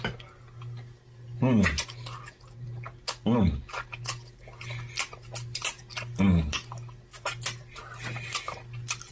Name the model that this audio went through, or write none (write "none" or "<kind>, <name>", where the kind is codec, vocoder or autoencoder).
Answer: none